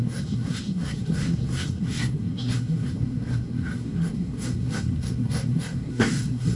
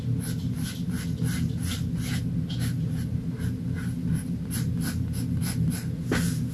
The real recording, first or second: second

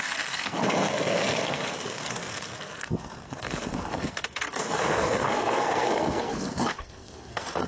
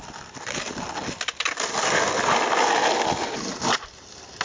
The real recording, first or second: second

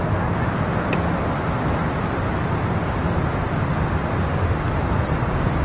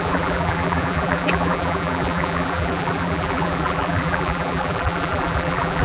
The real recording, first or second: first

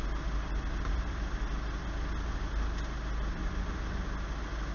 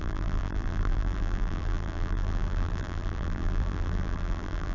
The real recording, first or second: first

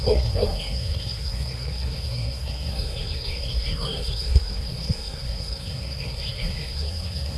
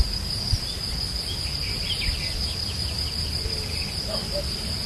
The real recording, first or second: second